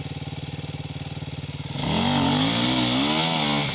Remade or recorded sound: recorded